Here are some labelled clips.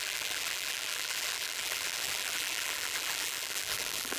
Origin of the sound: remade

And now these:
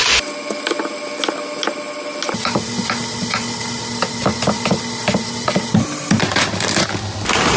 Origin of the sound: recorded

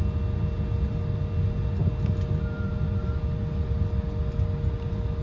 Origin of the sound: recorded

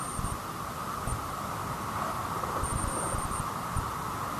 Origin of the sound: remade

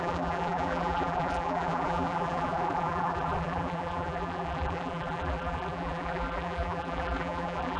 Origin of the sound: remade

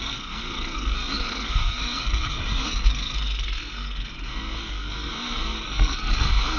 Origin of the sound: remade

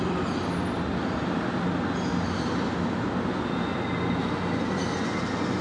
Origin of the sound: recorded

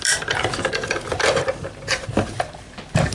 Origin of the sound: remade